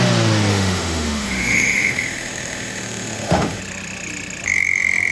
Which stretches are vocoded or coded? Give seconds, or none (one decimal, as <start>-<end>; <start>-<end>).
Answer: 0.5-3.6